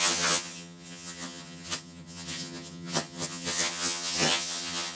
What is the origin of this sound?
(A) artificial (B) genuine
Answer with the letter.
A